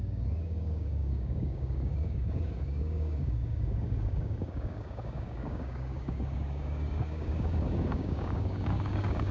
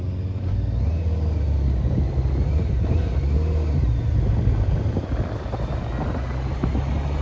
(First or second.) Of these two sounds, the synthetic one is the first